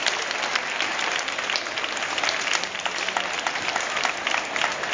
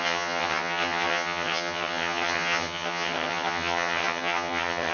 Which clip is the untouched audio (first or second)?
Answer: first